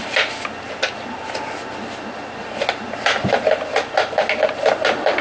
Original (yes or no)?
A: yes